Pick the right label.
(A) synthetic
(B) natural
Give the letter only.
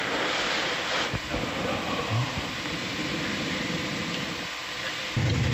B